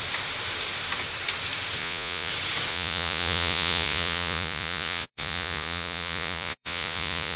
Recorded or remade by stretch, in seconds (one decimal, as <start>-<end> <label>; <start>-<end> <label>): 0.0-1.8 recorded; 1.8-2.3 remade; 2.3-2.7 recorded; 2.7-7.4 remade